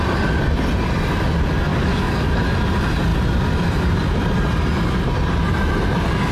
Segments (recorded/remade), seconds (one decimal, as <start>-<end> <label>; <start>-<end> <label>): 0.0-1.7 recorded; 1.7-2.4 remade; 2.4-6.3 recorded